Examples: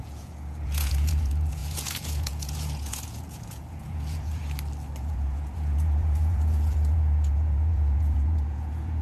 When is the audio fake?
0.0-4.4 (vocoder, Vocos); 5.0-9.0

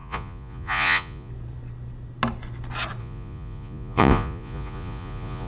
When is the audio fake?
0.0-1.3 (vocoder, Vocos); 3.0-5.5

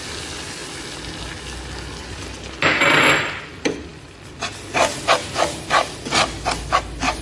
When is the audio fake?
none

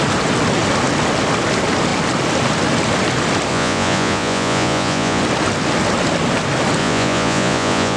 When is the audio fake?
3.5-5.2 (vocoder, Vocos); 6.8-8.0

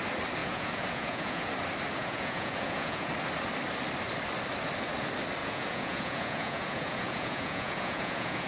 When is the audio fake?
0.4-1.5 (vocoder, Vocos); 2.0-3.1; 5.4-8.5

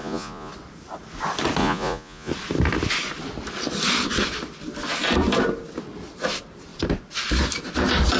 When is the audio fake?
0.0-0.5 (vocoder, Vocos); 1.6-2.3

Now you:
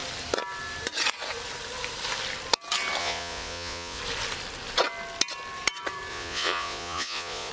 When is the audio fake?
3.0-4.0 (vocoder, Vocos); 6.1-7.5